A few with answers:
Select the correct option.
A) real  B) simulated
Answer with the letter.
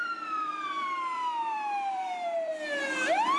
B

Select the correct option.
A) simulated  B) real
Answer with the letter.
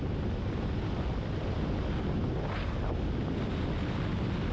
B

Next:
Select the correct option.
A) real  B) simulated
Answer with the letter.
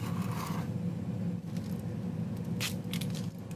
A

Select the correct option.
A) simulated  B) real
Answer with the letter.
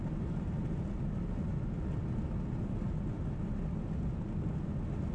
B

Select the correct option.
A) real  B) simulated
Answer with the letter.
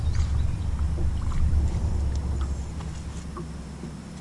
A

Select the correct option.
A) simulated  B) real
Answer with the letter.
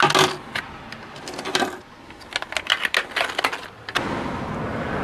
B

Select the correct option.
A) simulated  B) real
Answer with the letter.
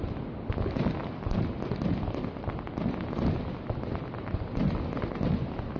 B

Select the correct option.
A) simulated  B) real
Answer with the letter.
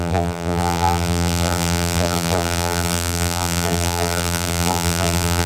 A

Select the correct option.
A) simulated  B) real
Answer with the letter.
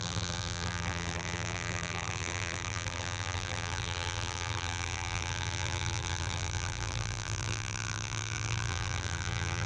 A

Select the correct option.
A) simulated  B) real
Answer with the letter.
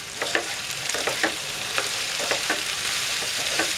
A